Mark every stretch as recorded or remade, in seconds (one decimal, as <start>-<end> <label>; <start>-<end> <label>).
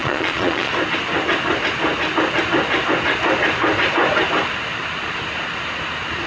0.0-0.7 remade; 0.7-6.3 recorded